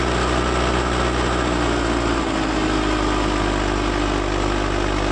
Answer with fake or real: real